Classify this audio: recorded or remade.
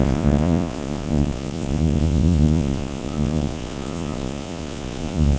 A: remade